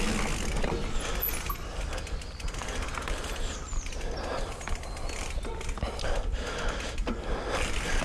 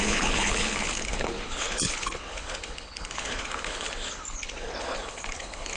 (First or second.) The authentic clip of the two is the first